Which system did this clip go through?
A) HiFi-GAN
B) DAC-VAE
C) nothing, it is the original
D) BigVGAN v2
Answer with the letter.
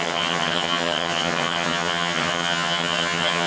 A